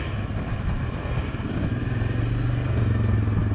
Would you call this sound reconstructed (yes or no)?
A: no